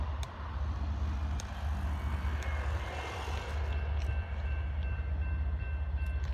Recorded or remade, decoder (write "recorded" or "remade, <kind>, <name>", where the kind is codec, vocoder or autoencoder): recorded